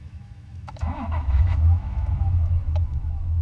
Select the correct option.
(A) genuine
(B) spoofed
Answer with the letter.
B